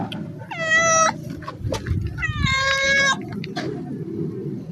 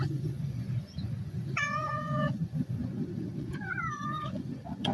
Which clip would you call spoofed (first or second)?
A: second